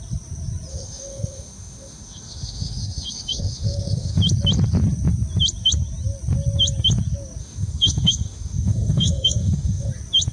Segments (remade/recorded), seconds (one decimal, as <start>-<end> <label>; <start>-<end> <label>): 0.0-0.7 recorded; 0.7-4.2 remade; 4.2-7.4 recorded; 7.4-9.9 remade; 9.9-10.3 recorded